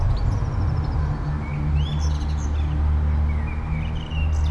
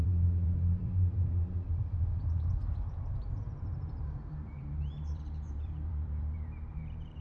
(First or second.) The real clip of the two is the first